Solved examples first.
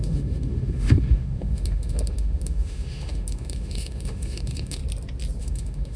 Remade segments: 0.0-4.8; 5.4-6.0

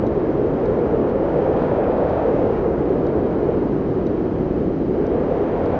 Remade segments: 1.0-2.8

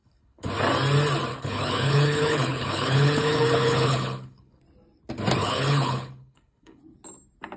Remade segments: 0.0-0.5; 1.3-4.6; 5.4-6.8

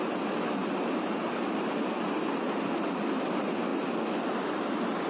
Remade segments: none

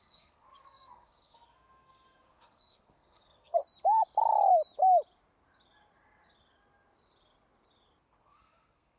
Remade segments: 0.0-3.6; 8.2-9.0